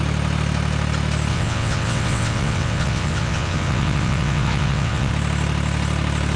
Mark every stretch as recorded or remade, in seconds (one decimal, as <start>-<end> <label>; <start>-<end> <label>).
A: 0.0-1.3 recorded; 1.3-5.1 remade; 5.1-6.4 recorded